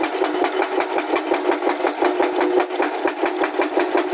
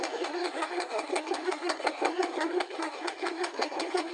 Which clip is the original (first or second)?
first